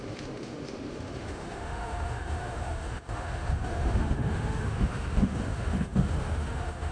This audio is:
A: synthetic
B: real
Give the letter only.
A